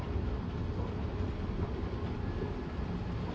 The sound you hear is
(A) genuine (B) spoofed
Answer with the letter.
A